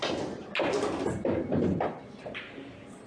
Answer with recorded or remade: recorded